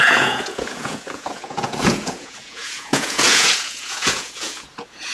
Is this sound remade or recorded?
remade